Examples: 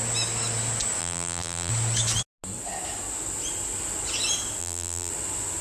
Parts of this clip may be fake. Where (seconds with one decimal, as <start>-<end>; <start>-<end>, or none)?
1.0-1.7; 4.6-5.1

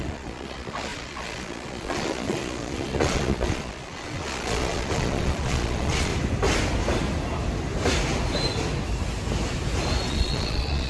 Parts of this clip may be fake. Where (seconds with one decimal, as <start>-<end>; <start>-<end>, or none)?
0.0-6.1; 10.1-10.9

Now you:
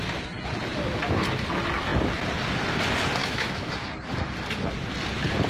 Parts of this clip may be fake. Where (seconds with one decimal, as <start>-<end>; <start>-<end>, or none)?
3.2-3.7